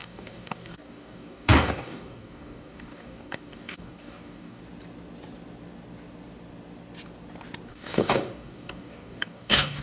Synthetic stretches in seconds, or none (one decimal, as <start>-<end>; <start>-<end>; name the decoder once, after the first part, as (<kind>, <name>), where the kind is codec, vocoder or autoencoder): 0.0-4.6 (codec, DAC); 7.7-9.8